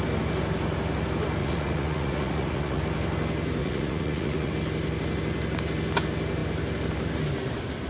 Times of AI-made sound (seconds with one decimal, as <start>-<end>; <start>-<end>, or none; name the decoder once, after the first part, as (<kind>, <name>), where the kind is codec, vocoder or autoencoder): 1.4-2.8 (vocoder, Vocos); 3.6-4.5